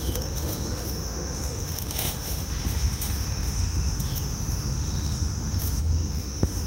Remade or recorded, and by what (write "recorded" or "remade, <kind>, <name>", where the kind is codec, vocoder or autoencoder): remade, autoencoder, DAC-VAE